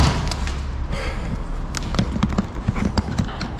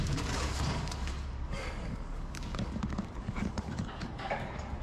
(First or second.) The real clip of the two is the first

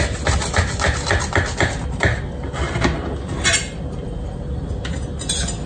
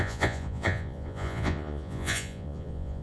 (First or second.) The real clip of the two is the first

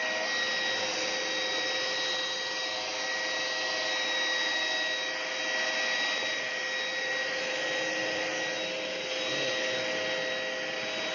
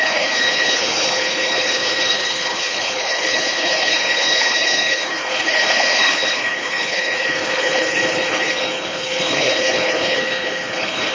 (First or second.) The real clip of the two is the first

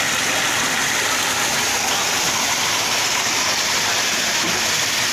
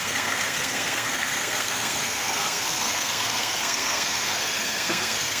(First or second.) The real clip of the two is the first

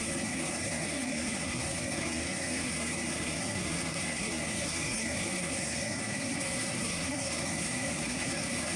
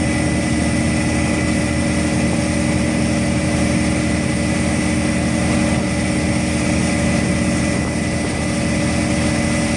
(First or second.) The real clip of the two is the second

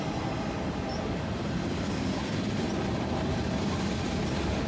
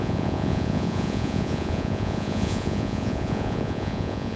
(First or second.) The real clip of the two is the first